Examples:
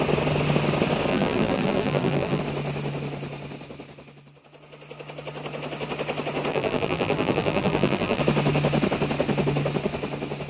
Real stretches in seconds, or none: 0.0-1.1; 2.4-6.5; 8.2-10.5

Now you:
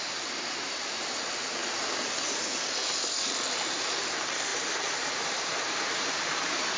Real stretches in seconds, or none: 1.6-3.5

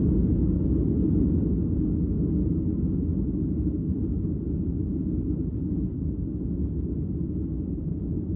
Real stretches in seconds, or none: 0.0-8.4

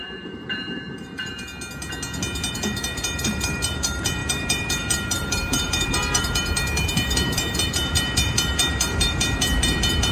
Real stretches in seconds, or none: 1.5-2.5

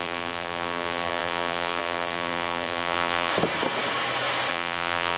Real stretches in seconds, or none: 3.3-4.5

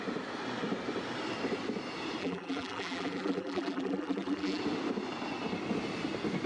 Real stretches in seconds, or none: 0.0-2.2; 4.6-6.5